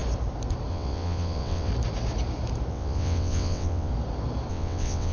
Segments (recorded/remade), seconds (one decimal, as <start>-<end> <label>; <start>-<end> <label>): 0.0-0.7 recorded; 0.7-1.7 remade; 1.7-2.7 recorded; 2.7-3.9 remade; 3.9-4.5 recorded; 4.5-5.1 remade